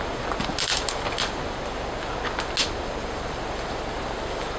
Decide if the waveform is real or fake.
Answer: real